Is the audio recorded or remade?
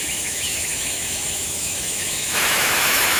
remade